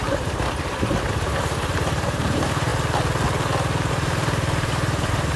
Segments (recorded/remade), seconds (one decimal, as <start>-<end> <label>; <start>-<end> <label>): 0.0-2.7 remade; 2.7-3.9 recorded; 3.9-5.4 remade